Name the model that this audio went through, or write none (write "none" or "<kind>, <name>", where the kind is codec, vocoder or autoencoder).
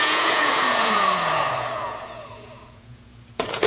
vocoder, Vocos